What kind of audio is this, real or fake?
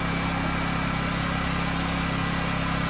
real